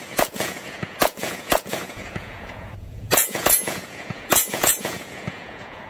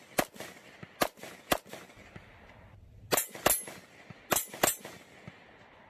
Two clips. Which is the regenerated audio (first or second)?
first